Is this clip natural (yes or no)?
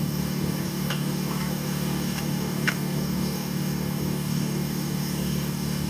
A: no